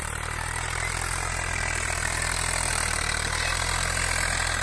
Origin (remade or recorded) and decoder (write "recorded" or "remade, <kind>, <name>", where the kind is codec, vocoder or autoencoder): recorded